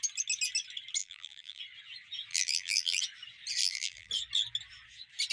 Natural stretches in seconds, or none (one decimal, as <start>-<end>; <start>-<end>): 0.0-1.0; 1.6-2.3; 3.0-3.6; 4.1-5.3

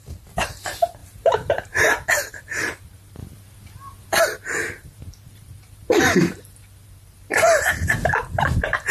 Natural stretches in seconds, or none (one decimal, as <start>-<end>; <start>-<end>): 3.2-4.2

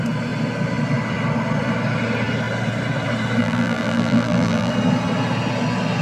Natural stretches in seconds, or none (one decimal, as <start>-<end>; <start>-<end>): 0.0-3.4; 4.7-6.0